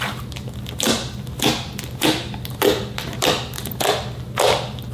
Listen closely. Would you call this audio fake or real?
real